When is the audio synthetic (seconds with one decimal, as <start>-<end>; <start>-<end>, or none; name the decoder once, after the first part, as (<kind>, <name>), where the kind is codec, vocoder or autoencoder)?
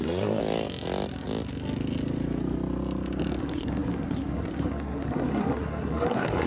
0.0-0.4 (codec, SNAC); 3.4-6.5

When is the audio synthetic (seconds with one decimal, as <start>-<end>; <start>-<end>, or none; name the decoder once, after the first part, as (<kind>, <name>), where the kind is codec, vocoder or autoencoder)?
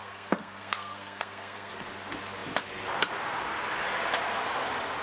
0.0-1.7 (codec, SNAC)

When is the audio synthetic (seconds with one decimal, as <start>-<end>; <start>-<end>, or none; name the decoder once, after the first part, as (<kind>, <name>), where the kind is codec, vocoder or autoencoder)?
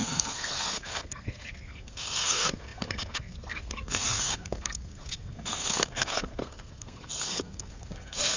0.0-8.4 (codec, SNAC)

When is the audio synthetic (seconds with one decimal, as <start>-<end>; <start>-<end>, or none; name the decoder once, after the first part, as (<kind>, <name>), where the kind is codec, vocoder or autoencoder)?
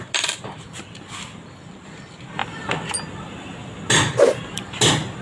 none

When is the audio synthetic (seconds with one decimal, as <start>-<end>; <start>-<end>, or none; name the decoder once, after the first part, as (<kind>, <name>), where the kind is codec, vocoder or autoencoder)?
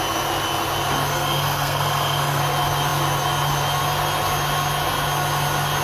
1.1-2.4 (codec, SNAC)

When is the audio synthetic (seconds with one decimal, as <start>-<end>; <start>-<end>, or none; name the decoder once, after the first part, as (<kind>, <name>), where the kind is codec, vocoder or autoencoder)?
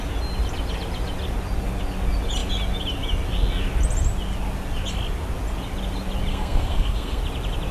6.3-7.2 (codec, SNAC)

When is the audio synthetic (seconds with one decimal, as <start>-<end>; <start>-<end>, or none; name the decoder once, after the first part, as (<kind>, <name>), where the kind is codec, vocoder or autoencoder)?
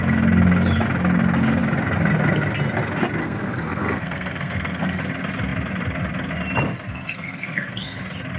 3.2-5.0 (codec, SNAC); 6.9-8.0